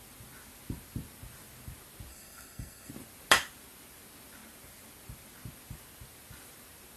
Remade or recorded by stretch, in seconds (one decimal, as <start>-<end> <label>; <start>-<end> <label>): 0.0-2.1 recorded; 2.1-2.9 remade; 2.9-7.0 recorded